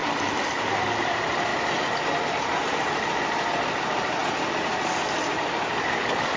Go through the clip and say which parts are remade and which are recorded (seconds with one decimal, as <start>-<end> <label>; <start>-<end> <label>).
0.0-1.5 remade; 1.5-2.7 recorded; 2.7-4.2 remade; 4.2-5.8 recorded; 5.8-6.4 remade